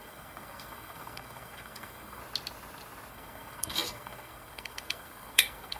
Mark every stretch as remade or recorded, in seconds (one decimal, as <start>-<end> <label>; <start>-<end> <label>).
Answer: 0.0-2.2 remade; 2.2-3.1 recorded; 3.1-5.8 remade